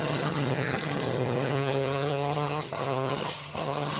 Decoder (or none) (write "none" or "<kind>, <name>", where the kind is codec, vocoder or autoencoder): vocoder, HiFi-GAN